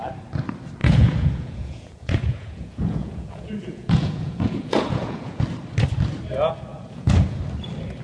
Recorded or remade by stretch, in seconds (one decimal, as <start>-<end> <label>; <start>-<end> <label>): 0.0-0.8 recorded; 0.8-5.4 remade; 5.4-6.7 recorded; 6.7-7.4 remade; 7.4-8.0 recorded